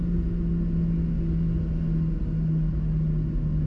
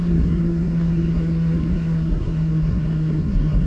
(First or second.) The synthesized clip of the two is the second